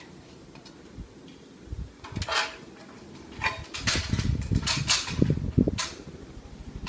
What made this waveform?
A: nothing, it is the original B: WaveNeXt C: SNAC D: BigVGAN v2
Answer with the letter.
A